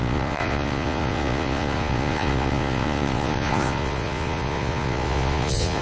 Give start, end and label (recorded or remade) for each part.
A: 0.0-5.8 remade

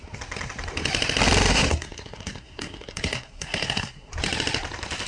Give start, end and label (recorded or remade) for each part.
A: 0.0-1.5 recorded; 1.5-4.1 remade; 4.1-5.1 recorded

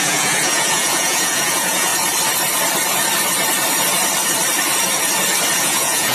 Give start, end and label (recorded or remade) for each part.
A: 0.0-1.9 remade; 1.9-5.6 recorded; 5.6-6.1 remade